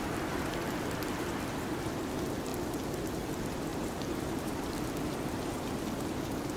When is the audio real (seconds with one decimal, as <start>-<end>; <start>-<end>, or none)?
0.0-3.7; 4.6-6.6